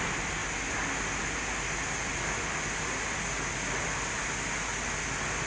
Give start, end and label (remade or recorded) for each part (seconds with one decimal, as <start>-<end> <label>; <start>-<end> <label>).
0.0-5.5 recorded